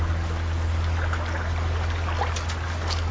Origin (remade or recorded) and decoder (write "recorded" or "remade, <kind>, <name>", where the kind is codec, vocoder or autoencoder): recorded